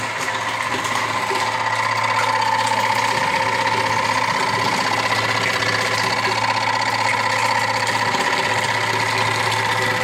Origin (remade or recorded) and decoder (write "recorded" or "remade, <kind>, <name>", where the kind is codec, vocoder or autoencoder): recorded